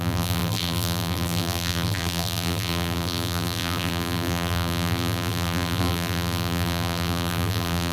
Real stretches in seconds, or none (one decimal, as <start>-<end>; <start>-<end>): none